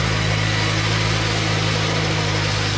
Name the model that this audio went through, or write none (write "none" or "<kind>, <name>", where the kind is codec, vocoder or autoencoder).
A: none